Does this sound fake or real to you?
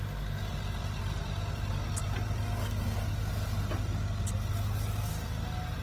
real